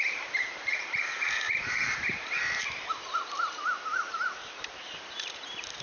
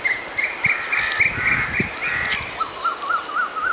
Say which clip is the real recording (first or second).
second